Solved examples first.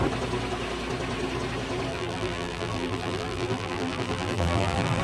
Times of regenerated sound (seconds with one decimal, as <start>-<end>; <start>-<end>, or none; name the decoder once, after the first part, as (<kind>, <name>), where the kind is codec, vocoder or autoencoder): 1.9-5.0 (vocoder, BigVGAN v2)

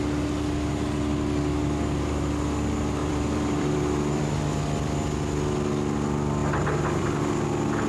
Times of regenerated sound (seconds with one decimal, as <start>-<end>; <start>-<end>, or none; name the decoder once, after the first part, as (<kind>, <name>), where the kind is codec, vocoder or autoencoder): 3.0-4.2 (vocoder, BigVGAN v2); 6.4-7.1

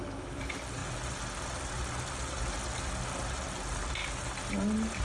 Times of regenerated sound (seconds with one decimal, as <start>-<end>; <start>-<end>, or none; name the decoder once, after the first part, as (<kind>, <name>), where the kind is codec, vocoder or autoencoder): none